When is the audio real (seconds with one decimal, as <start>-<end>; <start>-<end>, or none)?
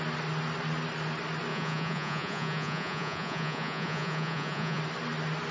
0.0-1.5; 4.8-5.5